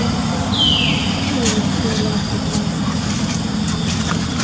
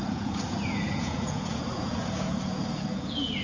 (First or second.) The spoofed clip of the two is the second